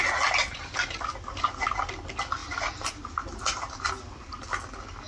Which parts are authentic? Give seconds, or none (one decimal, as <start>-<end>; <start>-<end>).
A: 0.0-0.4; 1.0-2.4; 3.9-5.1